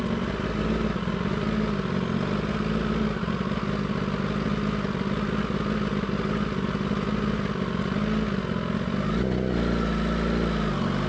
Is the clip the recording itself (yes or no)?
yes